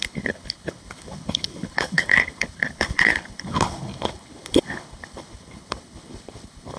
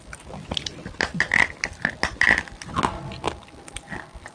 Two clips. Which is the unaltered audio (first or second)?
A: second